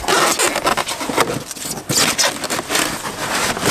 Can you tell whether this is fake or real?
real